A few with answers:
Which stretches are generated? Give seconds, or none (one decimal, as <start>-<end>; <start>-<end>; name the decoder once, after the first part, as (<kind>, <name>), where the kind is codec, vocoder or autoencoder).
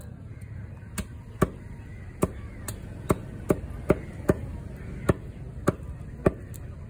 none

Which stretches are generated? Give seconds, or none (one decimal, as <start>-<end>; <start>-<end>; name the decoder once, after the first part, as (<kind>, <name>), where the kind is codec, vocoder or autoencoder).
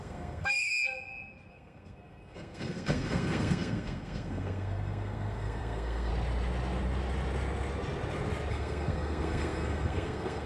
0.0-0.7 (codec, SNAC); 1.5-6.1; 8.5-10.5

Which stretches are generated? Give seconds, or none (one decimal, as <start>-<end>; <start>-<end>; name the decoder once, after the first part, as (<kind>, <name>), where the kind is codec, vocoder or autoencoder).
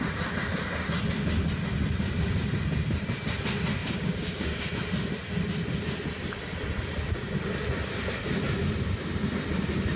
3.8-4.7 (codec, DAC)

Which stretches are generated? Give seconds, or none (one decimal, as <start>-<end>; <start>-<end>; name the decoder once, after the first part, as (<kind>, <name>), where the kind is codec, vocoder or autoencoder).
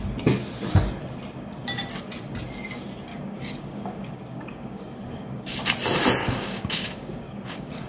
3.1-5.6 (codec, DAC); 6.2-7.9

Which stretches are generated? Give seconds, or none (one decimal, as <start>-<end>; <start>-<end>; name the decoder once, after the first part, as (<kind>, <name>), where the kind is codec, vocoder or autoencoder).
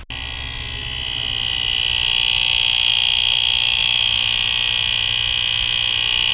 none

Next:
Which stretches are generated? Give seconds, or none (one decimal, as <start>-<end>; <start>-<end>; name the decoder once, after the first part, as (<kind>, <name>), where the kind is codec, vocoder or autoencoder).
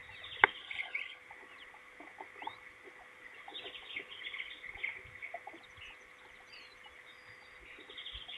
0.6-1.2 (codec, HILCodec)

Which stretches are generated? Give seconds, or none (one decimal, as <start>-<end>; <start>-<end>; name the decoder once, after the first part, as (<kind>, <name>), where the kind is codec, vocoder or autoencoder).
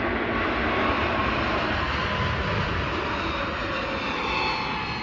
1.2-2.6 (vocoder, BigVGAN v2); 3.6-4.2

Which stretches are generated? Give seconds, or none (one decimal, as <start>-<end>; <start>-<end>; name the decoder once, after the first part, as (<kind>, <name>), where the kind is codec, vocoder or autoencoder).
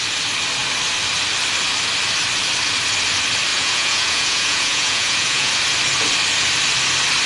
3.5-5.5 (vocoder, Vocos)